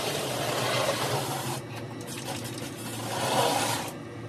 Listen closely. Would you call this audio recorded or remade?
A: recorded